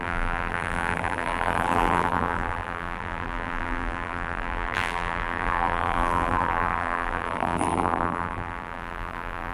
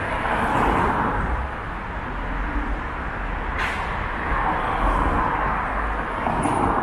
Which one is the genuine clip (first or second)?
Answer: second